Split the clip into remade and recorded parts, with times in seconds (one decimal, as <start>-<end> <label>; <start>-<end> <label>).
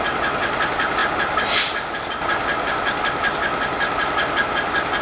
0.0-5.0 recorded